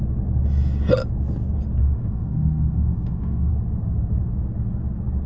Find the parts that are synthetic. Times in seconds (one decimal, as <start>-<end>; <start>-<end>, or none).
1.8-3.5